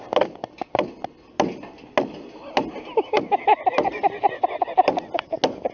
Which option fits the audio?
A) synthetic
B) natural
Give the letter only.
B